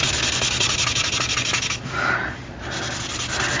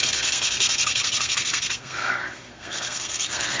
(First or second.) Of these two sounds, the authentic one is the first